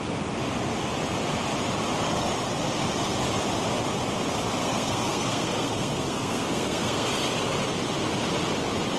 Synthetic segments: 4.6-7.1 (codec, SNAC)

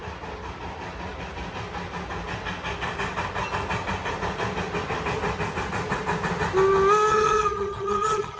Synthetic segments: 7.1-8.4 (vocoder, HiFi-GAN)

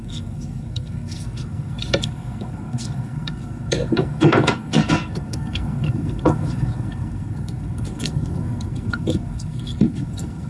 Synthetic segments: 0.0-10.5 (codec, SNAC)